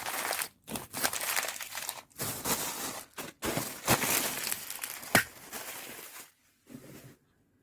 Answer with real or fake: real